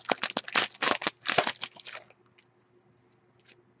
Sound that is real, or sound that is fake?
real